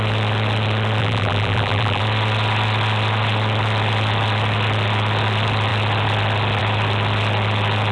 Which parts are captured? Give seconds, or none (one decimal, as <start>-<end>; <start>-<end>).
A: 0.0-1.0; 2.0-7.9